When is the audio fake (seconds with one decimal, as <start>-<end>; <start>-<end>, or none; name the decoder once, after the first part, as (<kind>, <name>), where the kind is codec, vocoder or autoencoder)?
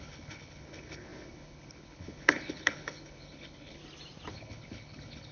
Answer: 0.0-3.8 (codec, HILCodec); 4.3-5.3